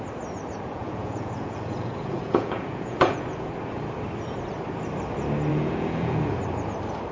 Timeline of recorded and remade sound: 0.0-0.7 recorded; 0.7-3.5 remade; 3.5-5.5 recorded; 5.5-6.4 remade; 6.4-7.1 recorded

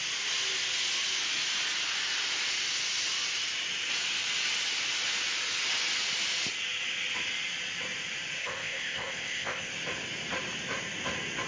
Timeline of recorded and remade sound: 0.0-8.4 recorded; 8.4-9.7 remade; 9.7-11.5 recorded

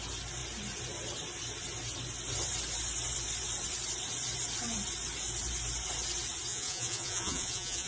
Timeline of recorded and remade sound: 0.0-6.5 recorded; 6.5-7.9 remade

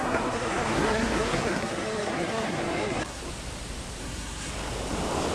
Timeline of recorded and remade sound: 0.0-3.2 remade; 3.2-4.0 recorded; 4.0-4.5 remade; 4.5-5.3 recorded